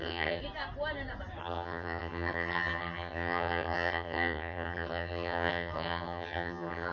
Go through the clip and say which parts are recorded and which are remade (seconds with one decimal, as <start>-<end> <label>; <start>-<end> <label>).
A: 0.0-0.4 remade; 0.4-1.4 recorded; 1.4-6.9 remade